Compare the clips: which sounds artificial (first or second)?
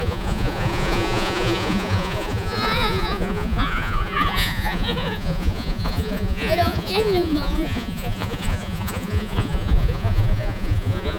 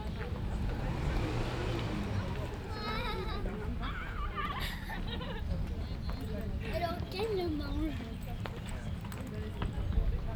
first